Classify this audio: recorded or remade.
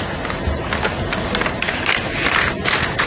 recorded